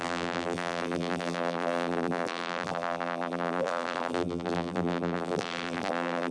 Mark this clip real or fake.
fake